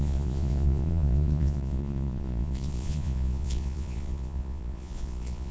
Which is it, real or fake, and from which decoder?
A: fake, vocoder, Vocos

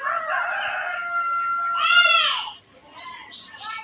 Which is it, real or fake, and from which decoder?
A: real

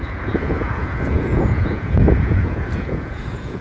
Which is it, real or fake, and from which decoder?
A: fake, vocoder, Vocos